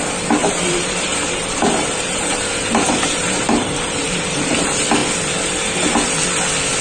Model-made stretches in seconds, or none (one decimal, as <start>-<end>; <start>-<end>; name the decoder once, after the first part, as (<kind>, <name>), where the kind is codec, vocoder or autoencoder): 0.4-4.5 (vocoder, BigVGAN v2)